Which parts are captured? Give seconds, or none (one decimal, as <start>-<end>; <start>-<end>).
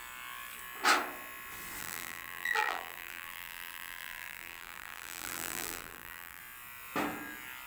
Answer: 0.0-1.8; 6.4-7.7